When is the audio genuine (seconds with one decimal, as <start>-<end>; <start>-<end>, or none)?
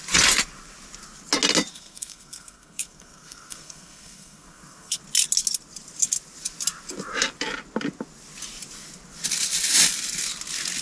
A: 0.0-1.7; 5.0-10.8